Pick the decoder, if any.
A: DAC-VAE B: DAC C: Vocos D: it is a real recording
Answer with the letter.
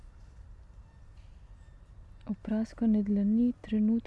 D